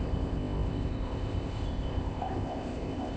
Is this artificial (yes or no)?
yes